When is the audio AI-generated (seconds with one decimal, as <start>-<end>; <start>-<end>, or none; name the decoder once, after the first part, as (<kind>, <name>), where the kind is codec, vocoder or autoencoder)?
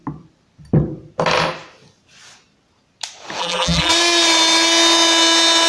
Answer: 3.4-3.9 (vocoder, BigVGAN v2)